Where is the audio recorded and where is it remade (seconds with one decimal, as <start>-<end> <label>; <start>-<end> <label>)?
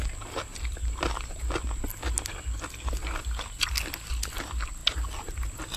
0.0-0.5 recorded; 0.5-1.4 remade; 1.4-5.8 recorded